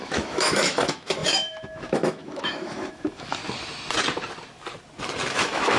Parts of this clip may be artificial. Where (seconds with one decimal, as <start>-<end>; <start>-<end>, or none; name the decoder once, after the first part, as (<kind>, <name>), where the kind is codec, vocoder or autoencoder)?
0.0-3.4 (autoencoder, DAC-VAE); 5.3-5.8